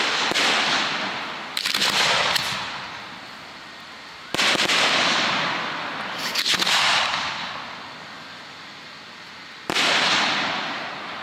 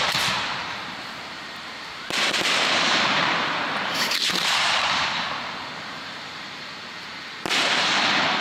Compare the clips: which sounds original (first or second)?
first